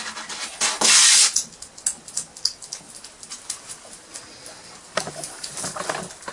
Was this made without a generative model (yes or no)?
yes